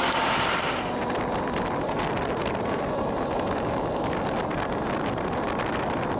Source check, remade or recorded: recorded